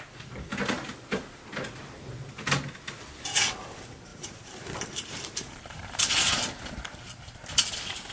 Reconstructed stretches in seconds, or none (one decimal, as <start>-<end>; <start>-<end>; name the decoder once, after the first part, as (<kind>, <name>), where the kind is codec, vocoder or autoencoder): 4.1-6.3 (vocoder, BigVGAN v2)